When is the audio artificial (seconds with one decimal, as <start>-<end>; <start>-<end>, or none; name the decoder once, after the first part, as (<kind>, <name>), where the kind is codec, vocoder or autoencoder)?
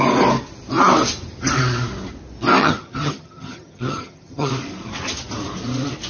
2.6-4.5 (vocoder, HiFi-GAN)